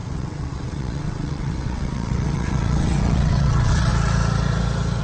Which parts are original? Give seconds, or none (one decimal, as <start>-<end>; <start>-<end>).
3.9-5.0